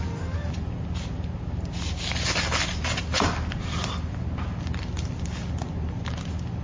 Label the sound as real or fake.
real